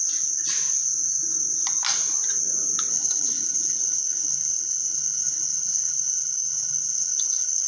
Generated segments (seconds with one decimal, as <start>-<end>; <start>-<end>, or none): 2.9-7.7